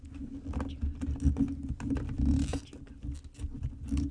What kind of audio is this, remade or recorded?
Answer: recorded